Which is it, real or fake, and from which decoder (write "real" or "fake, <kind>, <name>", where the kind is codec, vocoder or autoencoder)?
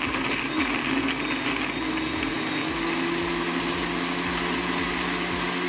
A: real